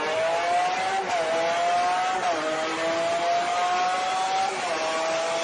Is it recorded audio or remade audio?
recorded